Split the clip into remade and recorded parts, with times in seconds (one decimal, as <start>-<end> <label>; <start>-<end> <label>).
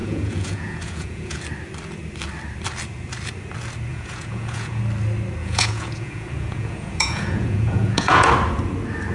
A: 0.0-1.4 remade; 1.4-3.9 recorded; 3.9-4.8 remade; 4.8-5.4 recorded; 5.4-8.3 remade; 8.3-9.1 recorded